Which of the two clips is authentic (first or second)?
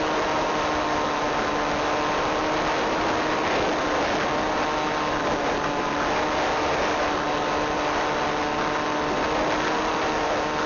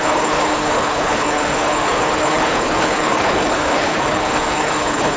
first